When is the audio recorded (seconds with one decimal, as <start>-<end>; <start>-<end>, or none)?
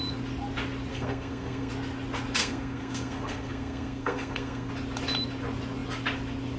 0.0-0.9; 1.7-2.4; 4.7-6.6